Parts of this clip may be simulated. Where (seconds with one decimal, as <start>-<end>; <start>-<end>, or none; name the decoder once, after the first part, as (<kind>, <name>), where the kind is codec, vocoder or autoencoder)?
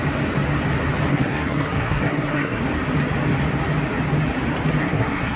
1.1-2.6 (codec, SNAC); 4.8-5.4